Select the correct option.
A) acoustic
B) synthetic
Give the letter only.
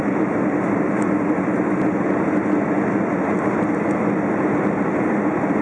A